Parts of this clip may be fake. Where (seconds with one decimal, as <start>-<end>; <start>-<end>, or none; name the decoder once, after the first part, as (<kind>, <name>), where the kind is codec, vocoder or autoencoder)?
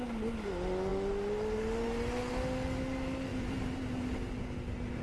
3.3-4.4 (vocoder, BigVGAN v2)